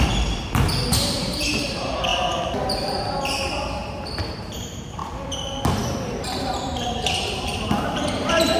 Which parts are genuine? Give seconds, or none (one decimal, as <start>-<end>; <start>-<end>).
5.0-5.7